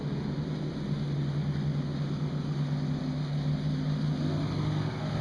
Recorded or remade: recorded